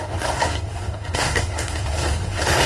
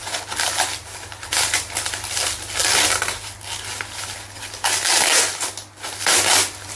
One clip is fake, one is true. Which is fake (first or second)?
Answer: first